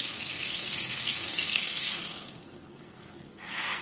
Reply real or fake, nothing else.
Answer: fake